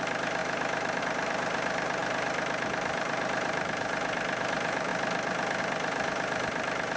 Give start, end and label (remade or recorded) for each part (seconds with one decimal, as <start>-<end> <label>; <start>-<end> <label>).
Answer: 0.0-4.9 remade; 4.9-5.6 recorded; 5.6-7.0 remade